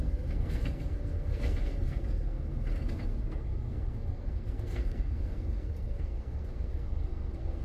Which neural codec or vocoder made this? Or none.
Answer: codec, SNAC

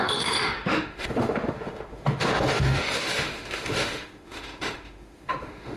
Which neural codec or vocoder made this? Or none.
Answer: autoencoder, DAC-VAE